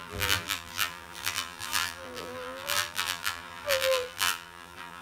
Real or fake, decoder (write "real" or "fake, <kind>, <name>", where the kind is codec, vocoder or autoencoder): fake, vocoder, BigVGAN v2